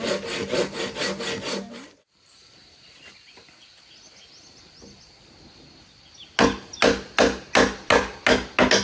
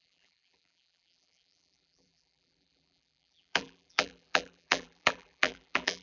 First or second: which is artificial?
second